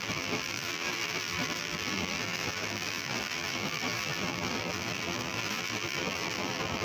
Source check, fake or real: fake